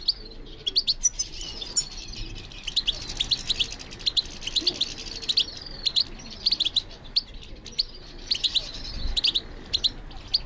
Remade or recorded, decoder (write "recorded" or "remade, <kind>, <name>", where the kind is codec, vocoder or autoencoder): recorded